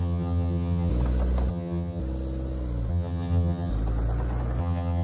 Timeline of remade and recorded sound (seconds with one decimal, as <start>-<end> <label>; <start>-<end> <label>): 0.0-0.9 remade; 0.9-1.5 recorded; 1.5-2.0 remade; 2.0-2.9 recorded; 2.9-3.7 remade; 3.7-4.6 recorded; 4.6-5.0 remade